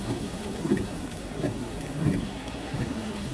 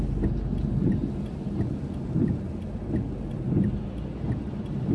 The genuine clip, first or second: second